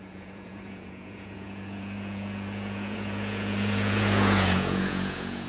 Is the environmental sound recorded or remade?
remade